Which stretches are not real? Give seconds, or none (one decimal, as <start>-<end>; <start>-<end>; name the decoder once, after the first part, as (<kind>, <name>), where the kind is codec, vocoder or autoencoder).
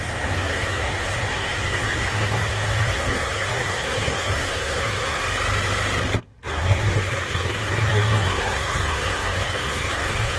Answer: 0.0-5.2 (codec, SNAC); 6.2-10.4